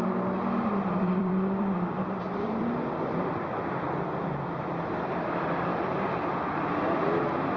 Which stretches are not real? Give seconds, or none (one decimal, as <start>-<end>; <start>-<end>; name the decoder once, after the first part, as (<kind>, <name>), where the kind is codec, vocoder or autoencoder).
0.0-7.6 (vocoder, BigVGAN v2)